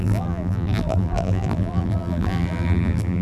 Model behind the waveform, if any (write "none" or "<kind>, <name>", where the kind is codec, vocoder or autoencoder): vocoder, BigVGAN v2